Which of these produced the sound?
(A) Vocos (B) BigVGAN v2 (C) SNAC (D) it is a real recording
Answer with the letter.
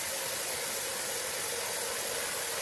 D